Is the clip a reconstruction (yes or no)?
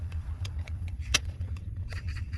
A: yes